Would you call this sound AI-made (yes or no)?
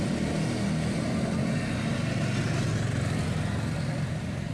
no